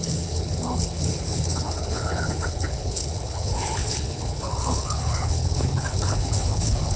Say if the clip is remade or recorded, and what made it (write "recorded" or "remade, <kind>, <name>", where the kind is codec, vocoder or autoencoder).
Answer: remade, codec, HILCodec